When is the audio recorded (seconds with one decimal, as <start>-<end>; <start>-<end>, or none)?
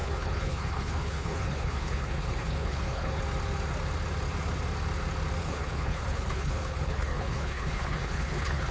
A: 3.2-5.4